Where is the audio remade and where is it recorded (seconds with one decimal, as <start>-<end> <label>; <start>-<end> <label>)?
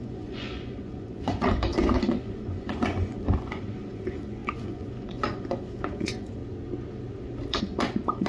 0.0-6.4 remade; 6.4-7.6 recorded; 7.6-8.3 remade